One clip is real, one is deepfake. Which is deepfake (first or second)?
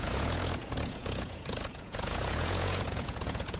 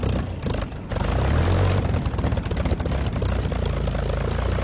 first